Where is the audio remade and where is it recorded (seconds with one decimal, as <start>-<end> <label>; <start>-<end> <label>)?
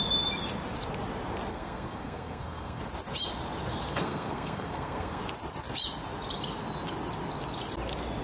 0.0-1.5 recorded; 1.5-2.8 remade; 2.8-3.9 recorded; 3.9-5.2 remade; 5.2-8.2 recorded